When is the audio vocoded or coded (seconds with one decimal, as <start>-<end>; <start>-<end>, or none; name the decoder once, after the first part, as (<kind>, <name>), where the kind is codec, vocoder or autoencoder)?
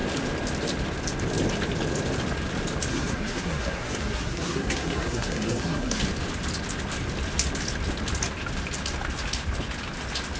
2.9-6.0 (codec, SNAC)